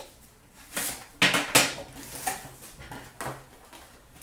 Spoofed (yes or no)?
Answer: no